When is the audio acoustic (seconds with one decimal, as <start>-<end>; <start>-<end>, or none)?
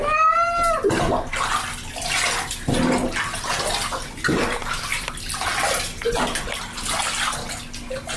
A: 0.0-4.9; 5.5-8.2